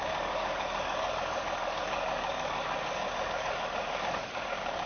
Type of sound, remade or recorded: remade